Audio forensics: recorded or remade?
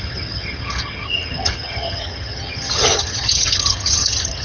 remade